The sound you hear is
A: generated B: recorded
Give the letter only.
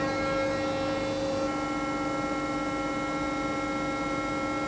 B